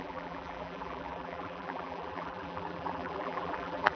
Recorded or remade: remade